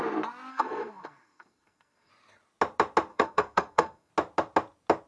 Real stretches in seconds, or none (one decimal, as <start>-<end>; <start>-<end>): 0.0-0.5; 2.1-3.1; 4.1-5.1